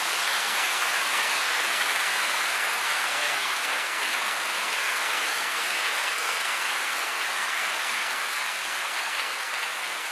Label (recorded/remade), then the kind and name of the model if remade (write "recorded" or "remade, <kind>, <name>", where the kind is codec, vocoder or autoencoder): remade, codec, SNAC